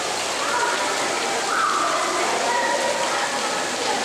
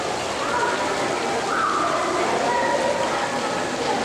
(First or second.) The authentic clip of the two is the second